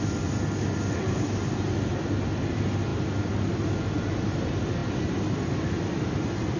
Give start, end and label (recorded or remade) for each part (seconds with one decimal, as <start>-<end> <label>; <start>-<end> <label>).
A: 0.0-6.6 recorded